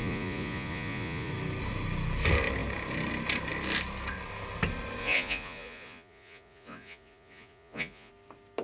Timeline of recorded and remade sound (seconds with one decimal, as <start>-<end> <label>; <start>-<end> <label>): 0.0-1.3 remade; 1.3-5.0 recorded; 5.0-8.1 remade; 8.1-8.6 recorded